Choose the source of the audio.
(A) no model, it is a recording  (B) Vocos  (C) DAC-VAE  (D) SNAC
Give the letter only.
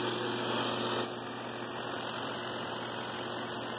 A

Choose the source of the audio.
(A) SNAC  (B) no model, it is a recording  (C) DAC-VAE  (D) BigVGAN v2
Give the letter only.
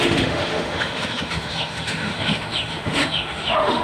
C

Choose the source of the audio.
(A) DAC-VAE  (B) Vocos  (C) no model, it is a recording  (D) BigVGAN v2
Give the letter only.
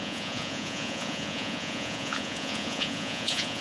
B